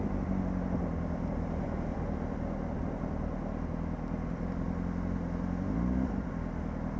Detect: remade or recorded recorded